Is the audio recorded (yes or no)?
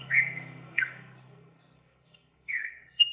no